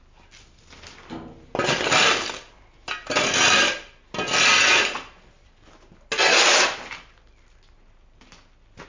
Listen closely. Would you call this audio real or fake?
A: real